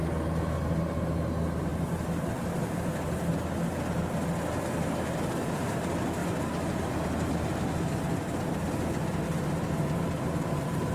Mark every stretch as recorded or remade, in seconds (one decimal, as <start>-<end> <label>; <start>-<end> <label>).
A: 0.0-6.2 recorded; 6.2-6.7 remade; 6.7-10.9 recorded